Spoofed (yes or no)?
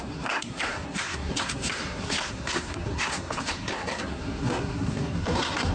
yes